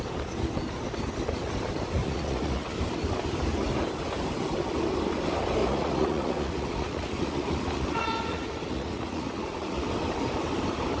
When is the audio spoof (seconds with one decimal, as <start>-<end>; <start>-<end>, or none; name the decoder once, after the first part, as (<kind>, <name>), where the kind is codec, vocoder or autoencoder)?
2.0-2.7 (vocoder, Vocos); 5.6-9.9